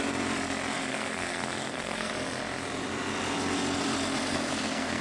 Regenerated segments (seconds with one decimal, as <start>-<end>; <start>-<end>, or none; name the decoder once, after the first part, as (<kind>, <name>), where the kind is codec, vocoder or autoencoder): 0.9-2.1 (codec, SNAC); 4.3-5.0

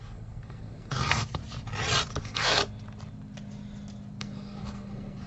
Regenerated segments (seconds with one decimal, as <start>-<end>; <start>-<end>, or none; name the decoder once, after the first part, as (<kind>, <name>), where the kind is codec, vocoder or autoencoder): 0.0-1.4 (codec, SNAC); 2.2-2.6; 4.2-5.3

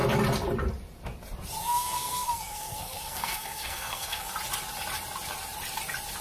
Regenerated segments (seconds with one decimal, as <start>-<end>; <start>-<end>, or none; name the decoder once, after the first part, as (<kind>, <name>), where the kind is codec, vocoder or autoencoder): 1.6-4.3 (codec, SNAC)

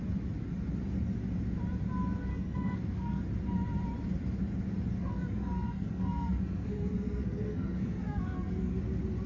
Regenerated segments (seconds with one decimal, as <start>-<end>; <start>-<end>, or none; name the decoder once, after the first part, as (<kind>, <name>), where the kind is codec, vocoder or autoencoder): 2.3-3.2 (codec, SNAC); 5.0-8.8

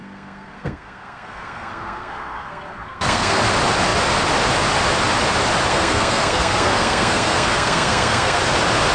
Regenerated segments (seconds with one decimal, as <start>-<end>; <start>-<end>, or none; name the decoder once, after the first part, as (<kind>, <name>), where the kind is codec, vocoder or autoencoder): 0.0-3.4 (codec, SNAC); 5.7-8.4

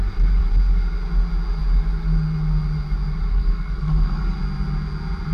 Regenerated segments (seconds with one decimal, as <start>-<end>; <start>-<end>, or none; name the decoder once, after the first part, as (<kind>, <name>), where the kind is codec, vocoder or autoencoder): 3.3-4.2 (codec, SNAC)

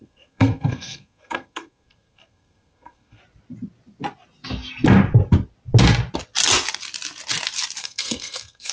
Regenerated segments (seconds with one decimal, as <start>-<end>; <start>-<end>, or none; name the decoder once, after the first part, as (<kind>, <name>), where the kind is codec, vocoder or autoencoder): 0.0-3.2 (codec, SNAC); 7.8-8.7

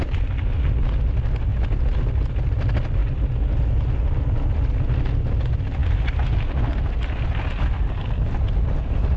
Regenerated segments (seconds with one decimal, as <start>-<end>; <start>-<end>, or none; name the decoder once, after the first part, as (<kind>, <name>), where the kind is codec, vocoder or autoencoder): none